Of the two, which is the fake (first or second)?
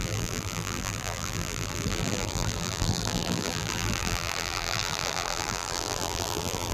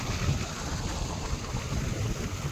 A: first